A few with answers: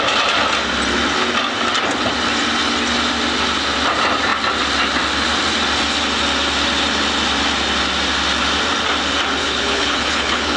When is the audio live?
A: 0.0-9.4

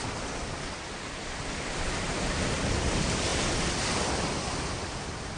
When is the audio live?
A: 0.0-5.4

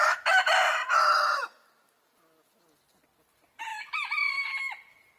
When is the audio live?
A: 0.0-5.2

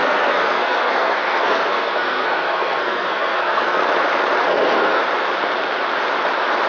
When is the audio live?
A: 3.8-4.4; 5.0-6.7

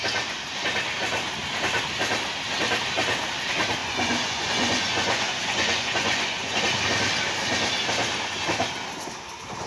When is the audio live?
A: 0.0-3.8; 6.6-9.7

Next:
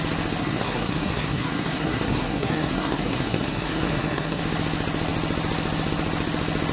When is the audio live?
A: 0.0-0.4; 4.4-6.7

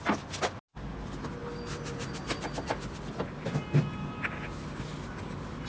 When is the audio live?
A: 0.0-5.7

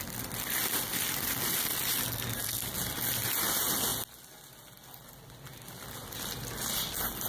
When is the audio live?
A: 0.0-7.3